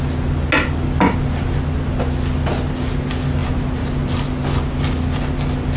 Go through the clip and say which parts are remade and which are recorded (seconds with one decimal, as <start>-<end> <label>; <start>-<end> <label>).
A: 0.0-5.8 recorded